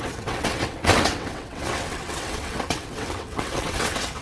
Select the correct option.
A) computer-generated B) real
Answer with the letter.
A